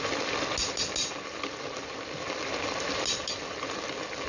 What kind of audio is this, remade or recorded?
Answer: recorded